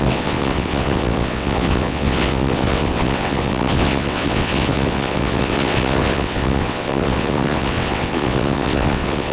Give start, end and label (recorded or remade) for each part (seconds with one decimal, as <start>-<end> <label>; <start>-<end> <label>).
0.0-9.3 remade